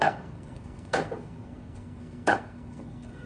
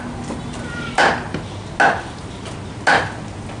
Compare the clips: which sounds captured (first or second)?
second